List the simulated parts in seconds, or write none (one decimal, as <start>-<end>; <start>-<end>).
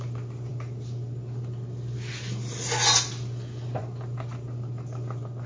none